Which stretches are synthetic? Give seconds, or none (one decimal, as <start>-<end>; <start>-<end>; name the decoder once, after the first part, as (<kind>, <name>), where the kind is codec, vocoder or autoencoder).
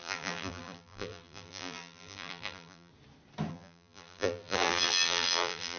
0.0-2.9 (vocoder, BigVGAN v2); 3.5-5.8